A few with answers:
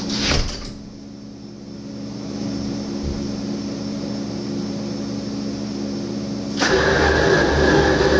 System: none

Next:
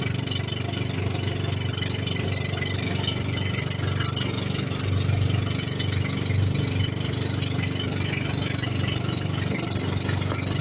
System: none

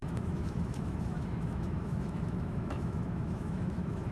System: autoencoder, DAC-VAE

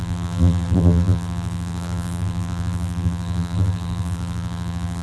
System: vocoder, BigVGAN v2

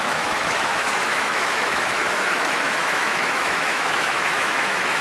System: autoencoder, DAC-VAE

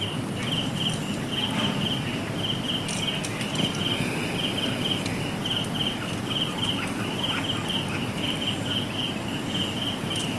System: none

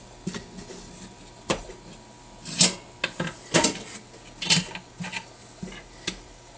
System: none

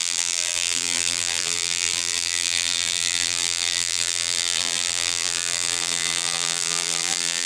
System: vocoder, BigVGAN v2